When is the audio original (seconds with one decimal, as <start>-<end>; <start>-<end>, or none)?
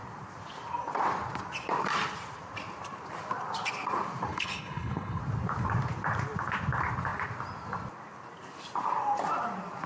0.0-4.3; 5.2-9.9